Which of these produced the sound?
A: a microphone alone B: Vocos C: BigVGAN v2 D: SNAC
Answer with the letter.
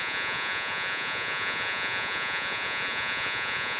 B